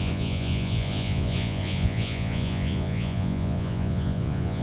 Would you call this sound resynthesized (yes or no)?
yes